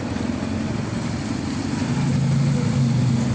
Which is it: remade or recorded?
recorded